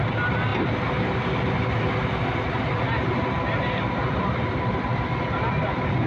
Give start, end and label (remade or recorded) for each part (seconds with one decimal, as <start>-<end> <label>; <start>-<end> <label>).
0.0-6.1 recorded